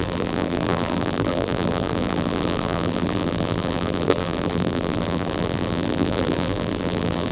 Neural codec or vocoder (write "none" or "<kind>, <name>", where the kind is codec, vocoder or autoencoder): vocoder, BigVGAN v2